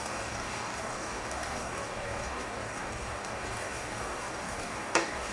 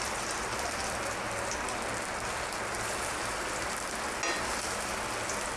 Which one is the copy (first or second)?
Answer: first